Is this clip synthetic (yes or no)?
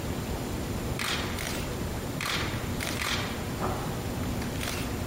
yes